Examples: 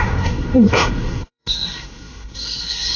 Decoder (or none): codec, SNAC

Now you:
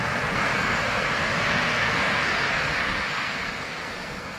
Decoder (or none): codec, SNAC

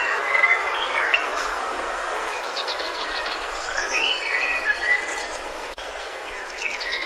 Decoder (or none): codec, SNAC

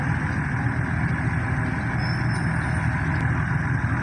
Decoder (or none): none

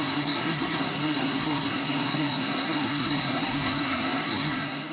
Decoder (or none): codec, SNAC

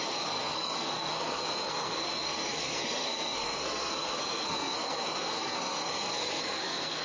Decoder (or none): codec, SNAC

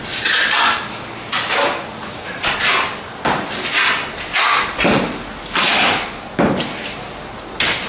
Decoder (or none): none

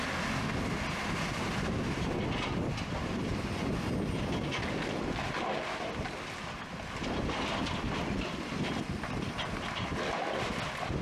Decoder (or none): none